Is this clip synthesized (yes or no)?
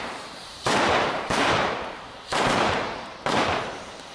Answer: yes